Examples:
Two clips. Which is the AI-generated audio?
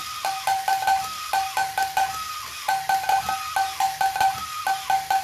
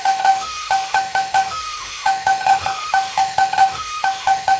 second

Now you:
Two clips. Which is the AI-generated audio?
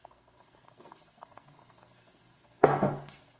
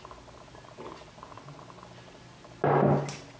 first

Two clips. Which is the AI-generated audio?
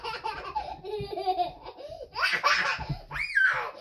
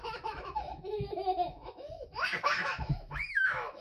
second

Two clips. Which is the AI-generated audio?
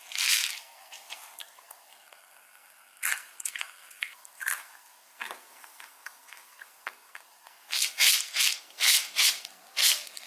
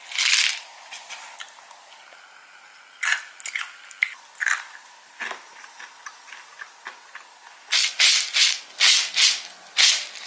first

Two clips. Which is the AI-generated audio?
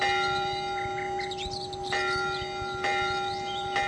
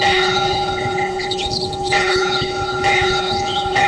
second